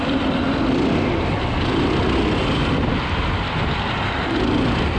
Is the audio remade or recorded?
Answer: recorded